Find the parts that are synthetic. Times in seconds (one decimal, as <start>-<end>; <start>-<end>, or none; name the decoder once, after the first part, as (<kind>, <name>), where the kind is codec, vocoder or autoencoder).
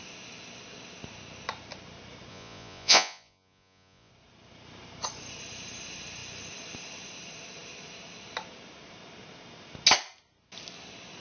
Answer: 2.3-4.1 (vocoder, Vocos)